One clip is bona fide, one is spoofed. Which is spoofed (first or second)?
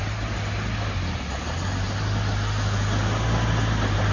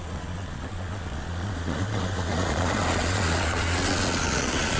second